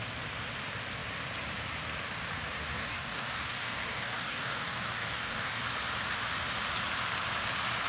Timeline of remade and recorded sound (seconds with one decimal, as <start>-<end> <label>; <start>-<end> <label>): 0.0-2.7 recorded; 2.7-5.6 remade; 5.6-7.9 recorded